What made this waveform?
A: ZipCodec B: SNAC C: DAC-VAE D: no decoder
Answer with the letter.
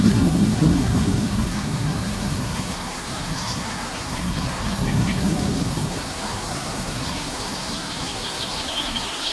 B